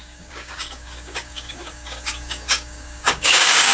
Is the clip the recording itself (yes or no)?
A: no